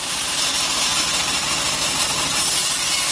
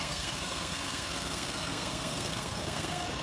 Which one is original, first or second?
first